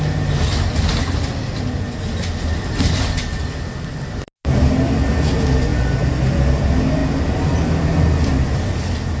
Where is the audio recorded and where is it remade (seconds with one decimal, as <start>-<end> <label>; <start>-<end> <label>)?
0.0-9.2 recorded